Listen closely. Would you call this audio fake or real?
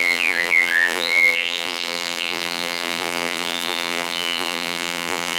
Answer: fake